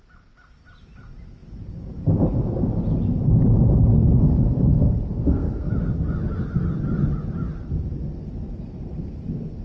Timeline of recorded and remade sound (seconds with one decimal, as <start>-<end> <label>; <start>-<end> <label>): 0.0-5.2 recorded; 5.2-5.7 remade; 5.7-9.6 recorded